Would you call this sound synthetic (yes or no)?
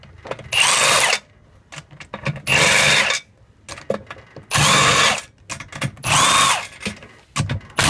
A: no